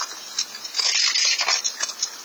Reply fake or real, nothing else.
real